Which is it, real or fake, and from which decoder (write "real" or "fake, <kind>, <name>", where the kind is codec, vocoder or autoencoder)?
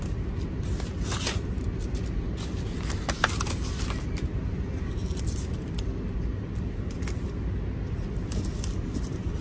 real